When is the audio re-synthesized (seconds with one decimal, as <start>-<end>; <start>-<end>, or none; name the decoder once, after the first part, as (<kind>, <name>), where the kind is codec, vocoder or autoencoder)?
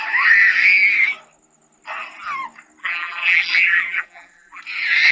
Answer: 2.8-4.6 (vocoder, BigVGAN v2)